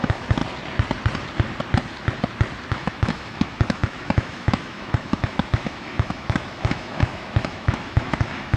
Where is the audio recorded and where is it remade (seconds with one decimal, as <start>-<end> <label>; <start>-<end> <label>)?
0.0-0.4 remade; 0.4-2.7 recorded; 2.7-8.6 remade